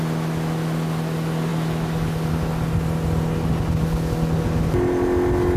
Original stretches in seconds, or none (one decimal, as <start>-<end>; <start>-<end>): 0.0-5.6